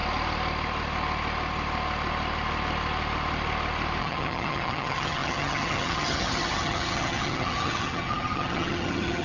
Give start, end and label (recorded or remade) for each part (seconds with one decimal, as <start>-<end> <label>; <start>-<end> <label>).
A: 0.0-4.0 recorded; 4.0-9.2 remade